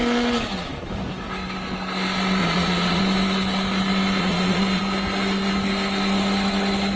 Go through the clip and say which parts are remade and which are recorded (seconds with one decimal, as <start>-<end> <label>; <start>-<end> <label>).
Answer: 0.0-2.4 recorded; 2.4-3.0 remade; 3.0-4.2 recorded; 4.2-4.8 remade; 4.8-7.0 recorded